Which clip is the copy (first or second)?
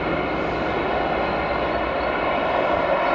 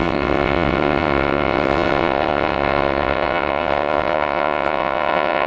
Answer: second